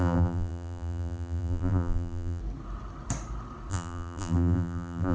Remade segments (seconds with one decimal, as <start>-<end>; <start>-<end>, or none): 0.0-2.4; 3.7-5.1